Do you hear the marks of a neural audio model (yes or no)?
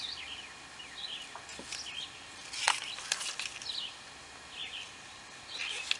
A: no